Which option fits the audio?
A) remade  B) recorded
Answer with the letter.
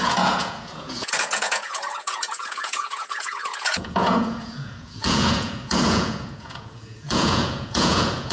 A